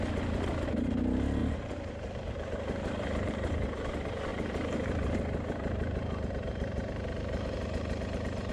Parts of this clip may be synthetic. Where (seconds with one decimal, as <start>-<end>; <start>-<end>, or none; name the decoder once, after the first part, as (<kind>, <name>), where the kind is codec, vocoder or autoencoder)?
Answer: 1.4-3.9 (vocoder, BigVGAN v2); 4.3-8.5